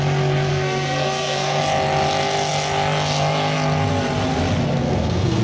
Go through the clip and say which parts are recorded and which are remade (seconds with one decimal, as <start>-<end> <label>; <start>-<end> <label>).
0.0-0.5 recorded; 0.5-1.6 remade; 1.6-4.8 recorded; 4.8-5.4 remade